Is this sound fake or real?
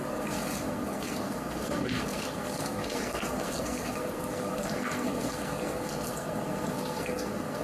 fake